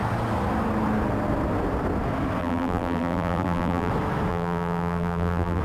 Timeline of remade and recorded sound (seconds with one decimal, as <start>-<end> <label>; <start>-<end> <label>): 0.0-2.4 recorded; 2.4-3.9 remade; 3.9-4.3 recorded; 4.3-5.6 remade